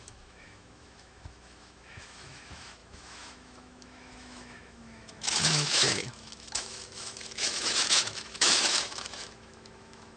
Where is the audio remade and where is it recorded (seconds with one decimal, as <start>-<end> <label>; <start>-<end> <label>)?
0.0-10.2 remade